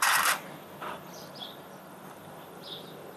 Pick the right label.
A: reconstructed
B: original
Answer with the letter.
B